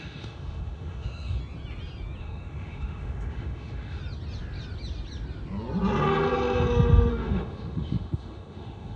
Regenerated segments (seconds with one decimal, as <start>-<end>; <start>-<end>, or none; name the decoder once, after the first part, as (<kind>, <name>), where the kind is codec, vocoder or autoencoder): 0.0-1.4 (autoencoder, DAC-VAE); 2.2-4.0; 7.1-9.0

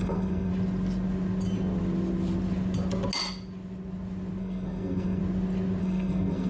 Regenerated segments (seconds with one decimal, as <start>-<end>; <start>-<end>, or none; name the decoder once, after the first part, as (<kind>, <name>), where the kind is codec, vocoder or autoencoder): 0.0-0.5 (codec, SNAC); 4.4-5.2; 5.8-6.5